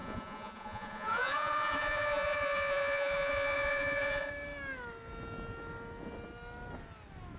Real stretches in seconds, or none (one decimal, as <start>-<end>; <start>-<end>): 4.3-7.4